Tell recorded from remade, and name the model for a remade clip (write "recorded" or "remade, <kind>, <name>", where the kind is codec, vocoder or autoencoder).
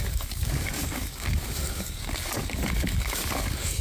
remade, codec, DAC